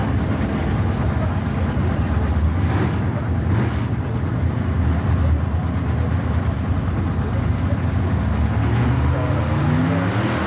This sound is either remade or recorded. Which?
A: recorded